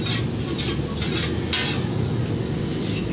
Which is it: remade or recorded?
recorded